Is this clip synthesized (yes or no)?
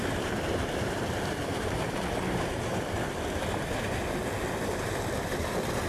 yes